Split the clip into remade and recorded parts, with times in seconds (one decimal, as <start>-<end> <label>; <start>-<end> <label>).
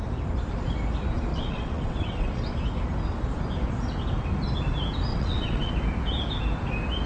0.0-1.3 recorded; 1.3-2.5 remade; 2.5-5.1 recorded; 5.1-5.7 remade; 5.7-7.1 recorded